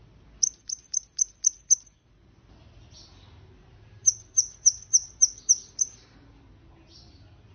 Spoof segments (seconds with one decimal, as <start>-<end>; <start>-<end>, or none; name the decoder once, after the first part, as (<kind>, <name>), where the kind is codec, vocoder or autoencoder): none